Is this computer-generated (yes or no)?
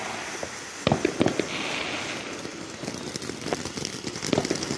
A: no